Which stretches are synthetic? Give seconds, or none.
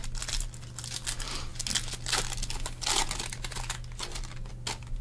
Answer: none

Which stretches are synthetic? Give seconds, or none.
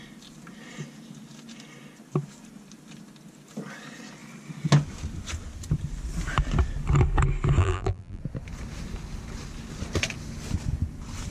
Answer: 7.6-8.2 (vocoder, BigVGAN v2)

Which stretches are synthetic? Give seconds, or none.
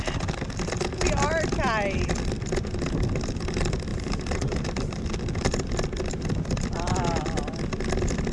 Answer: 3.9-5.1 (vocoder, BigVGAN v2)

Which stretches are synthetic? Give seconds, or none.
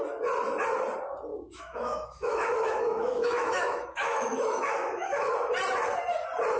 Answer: 1.3-5.3 (autoencoder, DAC-VAE)